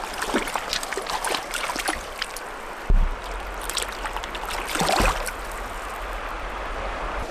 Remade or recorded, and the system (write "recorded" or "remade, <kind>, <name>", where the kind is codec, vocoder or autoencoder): recorded